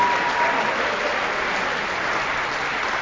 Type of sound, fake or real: real